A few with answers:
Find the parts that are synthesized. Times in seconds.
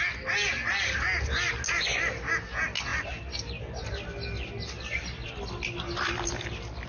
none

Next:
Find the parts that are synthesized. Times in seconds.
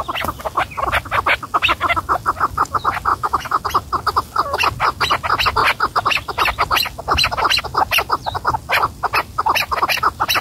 3.1-3.6 (autoencoder, DAC-VAE)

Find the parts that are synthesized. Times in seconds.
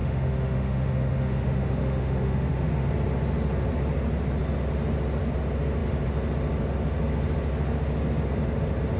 0.0-2.9 (autoencoder, DAC-VAE)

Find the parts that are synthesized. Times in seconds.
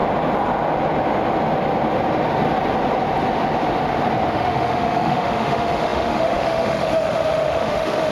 4.3-8.1 (autoencoder, DAC-VAE)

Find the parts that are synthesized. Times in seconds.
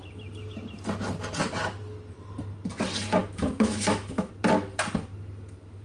3.2-4.3 (autoencoder, DAC-VAE)